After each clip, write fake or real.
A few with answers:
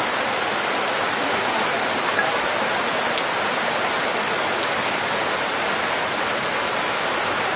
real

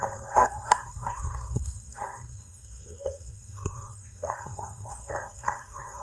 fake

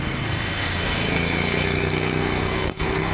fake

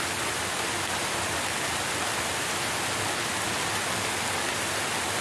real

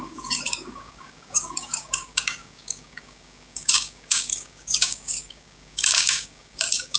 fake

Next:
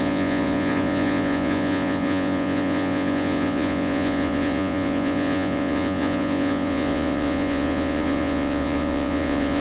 fake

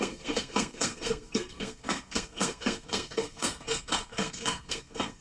fake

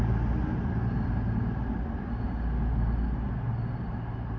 real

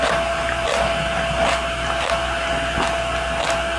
real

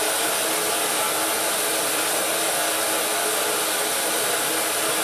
real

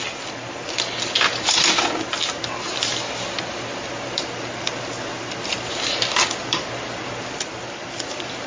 real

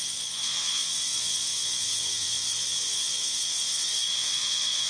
fake